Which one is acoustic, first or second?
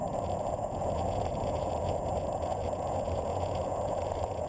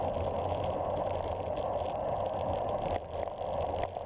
second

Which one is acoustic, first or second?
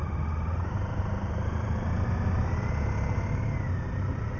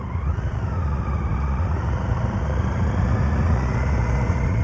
first